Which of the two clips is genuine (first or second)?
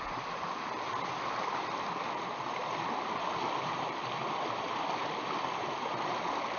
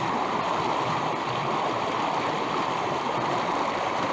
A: second